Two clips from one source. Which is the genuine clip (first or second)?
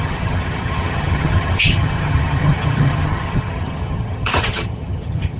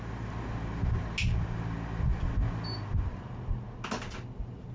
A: second